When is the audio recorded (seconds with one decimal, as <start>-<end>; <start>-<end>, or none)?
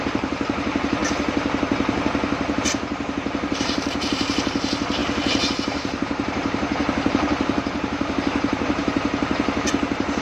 1.0-2.6